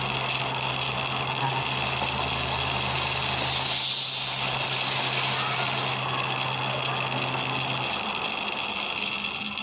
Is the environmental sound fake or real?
real